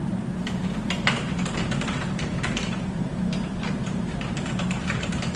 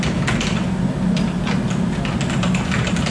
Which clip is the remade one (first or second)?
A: first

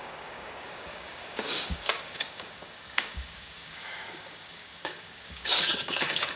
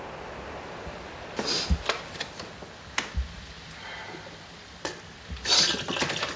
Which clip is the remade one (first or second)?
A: first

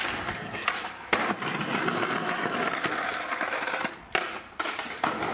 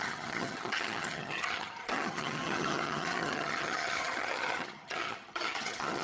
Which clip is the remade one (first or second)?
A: second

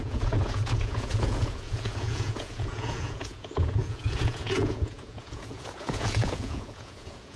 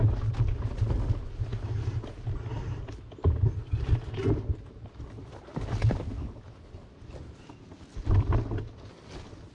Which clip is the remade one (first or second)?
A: first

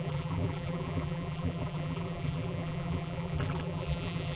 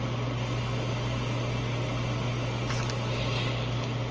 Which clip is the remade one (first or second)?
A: first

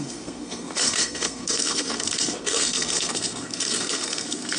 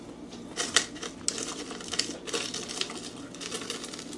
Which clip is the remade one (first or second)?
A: first